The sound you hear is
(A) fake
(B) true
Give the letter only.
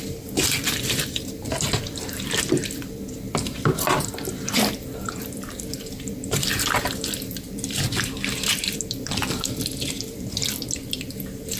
A